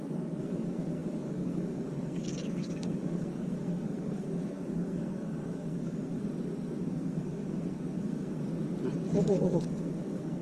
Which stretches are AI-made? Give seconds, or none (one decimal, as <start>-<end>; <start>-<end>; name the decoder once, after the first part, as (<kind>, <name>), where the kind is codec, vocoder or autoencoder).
0.0-6.2 (codec, SNAC); 6.8-8.4; 9.2-10.4